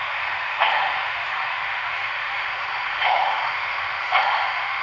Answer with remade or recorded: remade